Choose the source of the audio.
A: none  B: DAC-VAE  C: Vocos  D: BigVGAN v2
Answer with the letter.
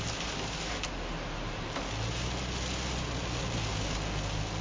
A